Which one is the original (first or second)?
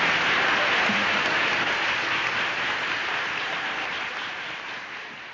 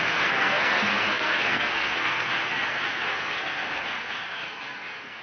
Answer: first